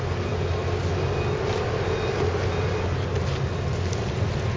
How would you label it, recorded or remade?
recorded